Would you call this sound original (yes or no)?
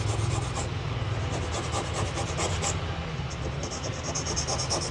yes